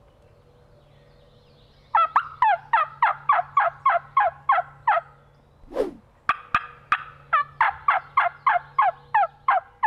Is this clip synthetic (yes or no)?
no